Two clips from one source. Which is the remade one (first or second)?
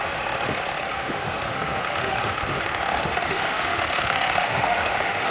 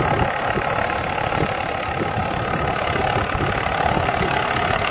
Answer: first